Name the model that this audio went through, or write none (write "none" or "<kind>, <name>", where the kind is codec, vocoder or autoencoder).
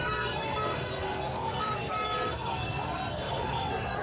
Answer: codec, SNAC